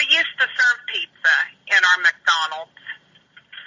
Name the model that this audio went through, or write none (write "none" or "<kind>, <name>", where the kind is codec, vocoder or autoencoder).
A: vocoder, BigVGAN v2